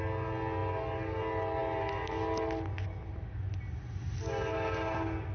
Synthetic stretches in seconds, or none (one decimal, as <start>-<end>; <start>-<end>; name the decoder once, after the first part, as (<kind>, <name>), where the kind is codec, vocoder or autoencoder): none